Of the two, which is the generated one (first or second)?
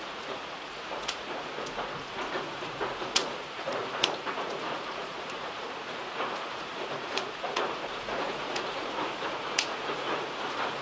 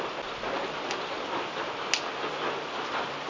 first